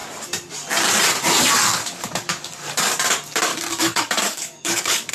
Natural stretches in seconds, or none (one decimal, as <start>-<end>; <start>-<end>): 0.0-1.8; 2.9-3.5